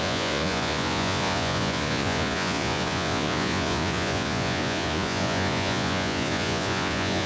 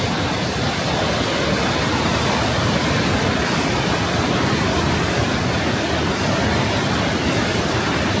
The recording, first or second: second